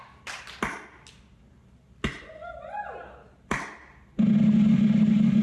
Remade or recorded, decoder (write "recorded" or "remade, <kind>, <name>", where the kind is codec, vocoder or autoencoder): recorded